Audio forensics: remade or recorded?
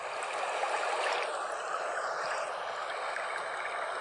recorded